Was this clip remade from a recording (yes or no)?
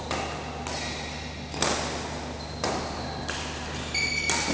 no